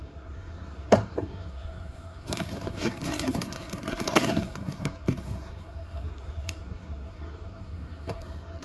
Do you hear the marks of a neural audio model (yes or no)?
yes